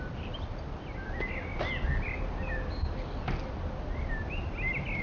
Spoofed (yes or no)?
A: no